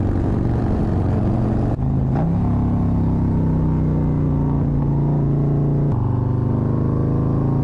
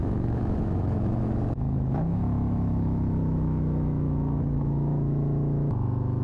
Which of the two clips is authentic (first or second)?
first